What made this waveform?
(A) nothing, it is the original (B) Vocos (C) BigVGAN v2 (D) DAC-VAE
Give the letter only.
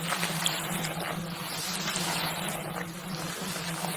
A